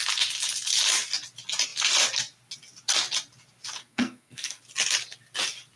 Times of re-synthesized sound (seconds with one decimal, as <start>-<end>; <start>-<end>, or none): 3.8-4.6